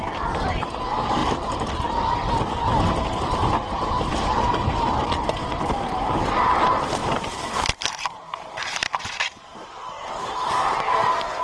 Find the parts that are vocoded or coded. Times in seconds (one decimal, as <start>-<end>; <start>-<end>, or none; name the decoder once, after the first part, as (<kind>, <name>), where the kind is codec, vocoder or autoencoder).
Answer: 1.2-2.4 (vocoder, BigVGAN v2); 5.4-5.9; 7.0-11.4